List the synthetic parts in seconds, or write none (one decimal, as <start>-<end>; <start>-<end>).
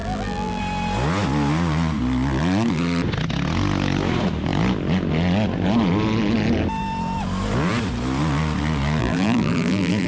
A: 0.0-0.6; 9.0-10.1